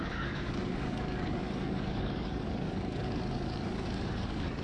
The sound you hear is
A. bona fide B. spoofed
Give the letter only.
B